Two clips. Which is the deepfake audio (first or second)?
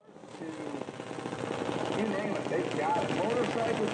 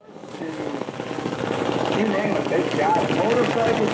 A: second